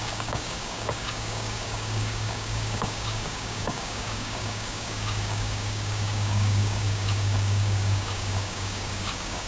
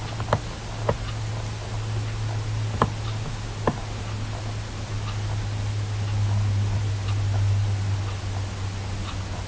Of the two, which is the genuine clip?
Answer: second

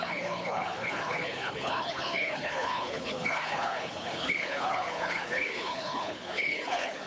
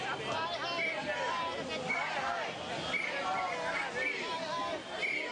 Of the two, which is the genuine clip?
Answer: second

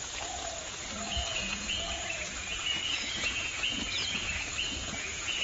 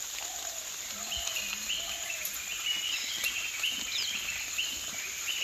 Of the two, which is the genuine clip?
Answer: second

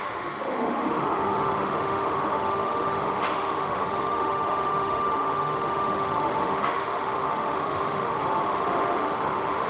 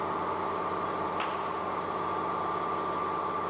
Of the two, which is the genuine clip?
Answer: second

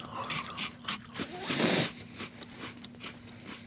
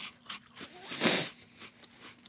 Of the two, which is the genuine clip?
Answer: second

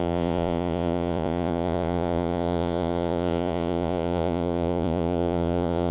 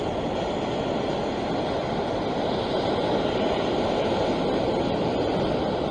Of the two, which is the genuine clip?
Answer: second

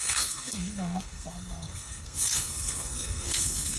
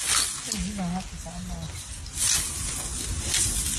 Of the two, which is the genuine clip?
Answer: second